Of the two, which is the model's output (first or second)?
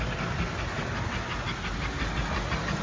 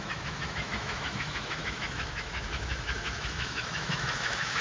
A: second